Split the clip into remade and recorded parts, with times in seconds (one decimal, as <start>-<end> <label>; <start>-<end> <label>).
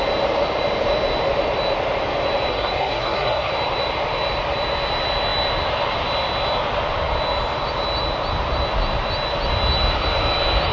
0.0-2.5 recorded; 2.5-3.5 remade; 3.5-10.7 recorded